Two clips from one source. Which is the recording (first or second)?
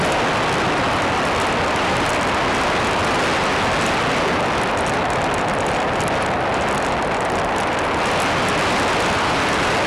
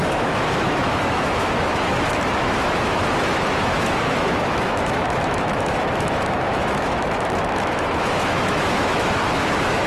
first